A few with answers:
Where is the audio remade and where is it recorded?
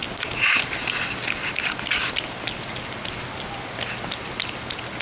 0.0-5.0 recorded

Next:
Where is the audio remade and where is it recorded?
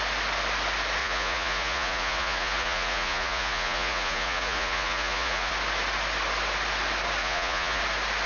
0.0-1.0 recorded; 1.0-5.5 remade; 5.5-7.2 recorded; 7.2-7.8 remade; 7.8-8.3 recorded